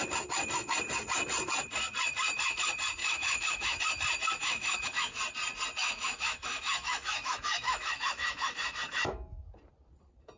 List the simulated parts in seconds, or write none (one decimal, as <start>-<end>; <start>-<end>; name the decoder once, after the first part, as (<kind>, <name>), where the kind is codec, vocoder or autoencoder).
3.0-3.8 (autoencoder, DAC-VAE); 4.4-5.2; 5.8-9.5